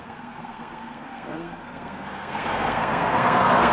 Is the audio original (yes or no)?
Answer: no